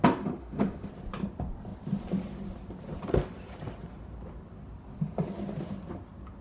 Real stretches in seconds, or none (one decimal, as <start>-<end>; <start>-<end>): 0.0-0.4; 0.9-6.4